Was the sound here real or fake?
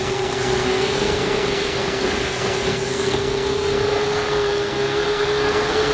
fake